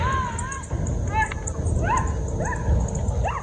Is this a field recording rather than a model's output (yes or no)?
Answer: yes